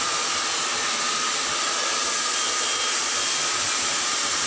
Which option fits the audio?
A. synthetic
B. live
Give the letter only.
B